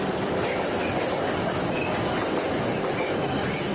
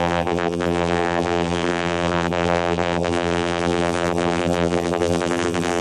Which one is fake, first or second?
second